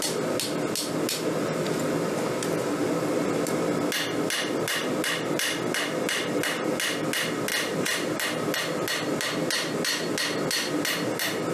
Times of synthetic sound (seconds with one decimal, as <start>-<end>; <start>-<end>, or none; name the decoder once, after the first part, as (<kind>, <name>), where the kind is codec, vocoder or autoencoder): none